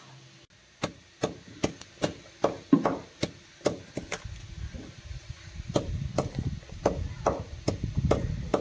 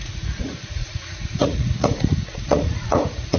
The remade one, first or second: second